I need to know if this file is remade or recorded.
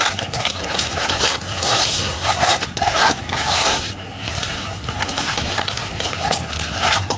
remade